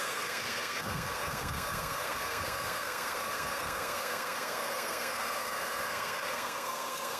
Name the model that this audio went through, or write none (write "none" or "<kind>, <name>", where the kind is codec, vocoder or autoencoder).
codec, SNAC